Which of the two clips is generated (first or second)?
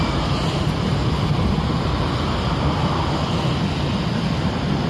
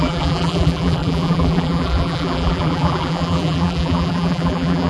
second